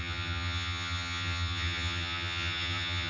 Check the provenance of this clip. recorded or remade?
remade